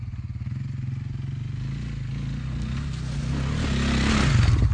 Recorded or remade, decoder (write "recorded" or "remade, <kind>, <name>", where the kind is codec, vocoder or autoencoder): recorded